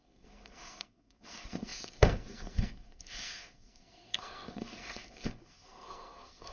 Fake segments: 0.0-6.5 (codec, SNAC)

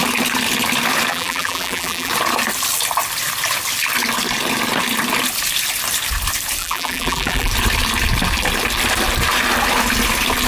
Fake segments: 1.1-2.1 (vocoder, BigVGAN v2); 6.6-7.5